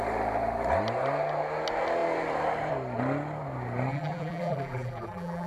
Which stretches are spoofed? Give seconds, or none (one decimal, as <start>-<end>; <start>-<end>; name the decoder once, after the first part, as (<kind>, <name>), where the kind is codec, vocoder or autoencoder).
3.9-5.5 (vocoder, BigVGAN v2)